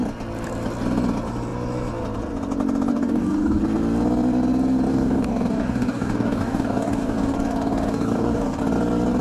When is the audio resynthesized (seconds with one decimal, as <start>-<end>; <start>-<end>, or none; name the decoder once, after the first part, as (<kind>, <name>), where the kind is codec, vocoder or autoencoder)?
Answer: 2.9-3.6 (codec, DAC); 4.9-8.6